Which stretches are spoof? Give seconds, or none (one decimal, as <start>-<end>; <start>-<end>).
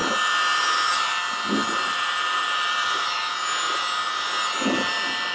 1.6-3.2